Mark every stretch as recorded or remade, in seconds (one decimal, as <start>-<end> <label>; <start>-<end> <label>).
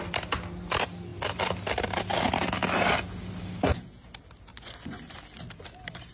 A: 0.0-4.5 recorded; 4.5-5.2 remade; 5.2-6.1 recorded